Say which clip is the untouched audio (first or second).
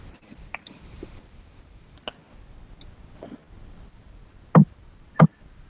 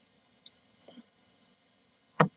first